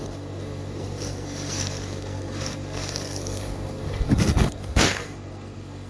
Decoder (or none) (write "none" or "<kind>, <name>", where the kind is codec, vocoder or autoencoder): codec, SNAC